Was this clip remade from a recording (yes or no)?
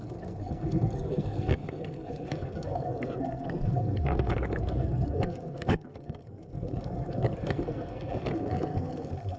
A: yes